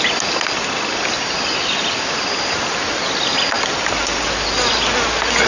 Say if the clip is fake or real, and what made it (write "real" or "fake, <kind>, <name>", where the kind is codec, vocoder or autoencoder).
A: real